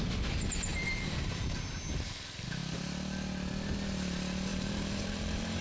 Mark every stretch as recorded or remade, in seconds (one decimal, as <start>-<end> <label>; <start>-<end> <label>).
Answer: 0.0-0.7 recorded; 0.7-1.6 remade; 1.6-4.5 recorded; 4.5-5.6 remade